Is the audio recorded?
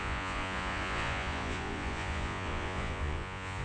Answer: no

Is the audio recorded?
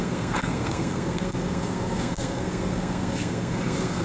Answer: no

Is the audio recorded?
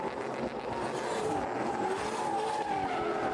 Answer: yes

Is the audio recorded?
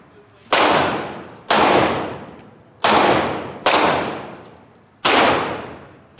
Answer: yes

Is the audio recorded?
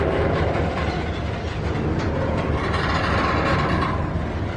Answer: yes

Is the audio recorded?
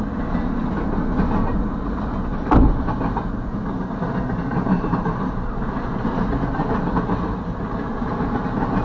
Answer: yes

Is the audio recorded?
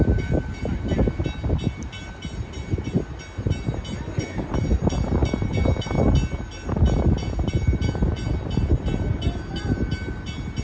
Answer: yes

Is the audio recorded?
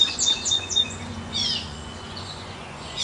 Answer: no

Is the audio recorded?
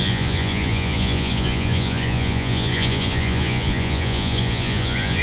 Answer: no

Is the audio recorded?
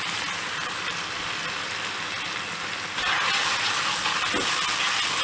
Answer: yes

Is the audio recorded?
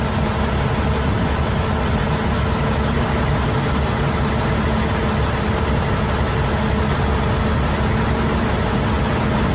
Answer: yes